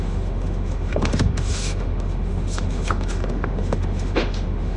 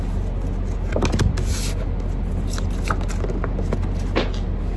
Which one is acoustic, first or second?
second